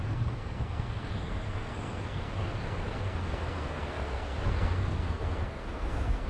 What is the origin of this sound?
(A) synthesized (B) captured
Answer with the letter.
A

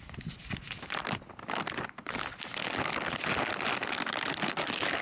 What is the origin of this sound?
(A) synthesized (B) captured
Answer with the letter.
B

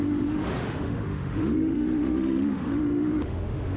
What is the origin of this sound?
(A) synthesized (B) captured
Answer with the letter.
A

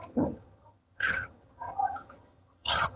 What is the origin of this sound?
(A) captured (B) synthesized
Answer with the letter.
B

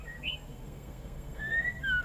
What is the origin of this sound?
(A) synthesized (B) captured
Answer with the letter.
A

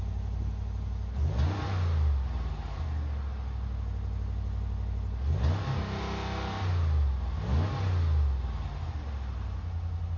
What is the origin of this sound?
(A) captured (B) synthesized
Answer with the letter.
A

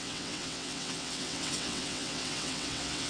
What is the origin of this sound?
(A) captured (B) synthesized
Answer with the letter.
B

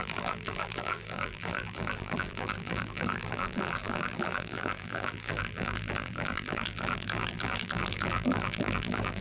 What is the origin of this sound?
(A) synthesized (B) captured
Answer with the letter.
A